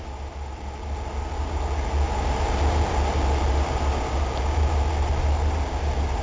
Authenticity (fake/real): real